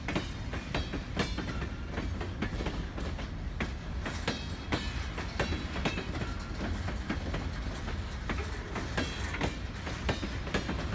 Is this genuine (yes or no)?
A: yes